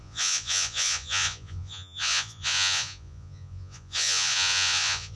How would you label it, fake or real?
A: fake